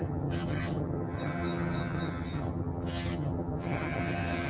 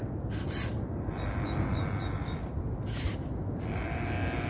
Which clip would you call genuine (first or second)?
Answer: second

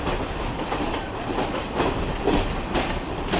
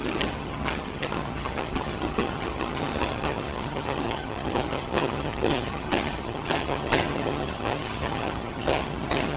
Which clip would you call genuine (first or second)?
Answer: first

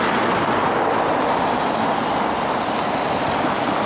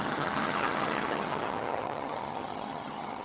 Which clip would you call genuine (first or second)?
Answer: first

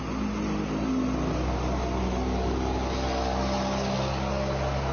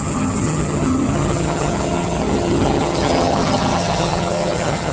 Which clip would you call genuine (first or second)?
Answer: first